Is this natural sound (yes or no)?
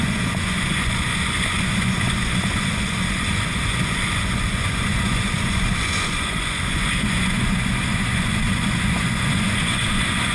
no